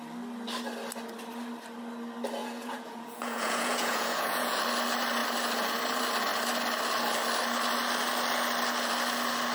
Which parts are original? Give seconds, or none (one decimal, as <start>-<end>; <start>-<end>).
0.0-2.4; 4.6-9.5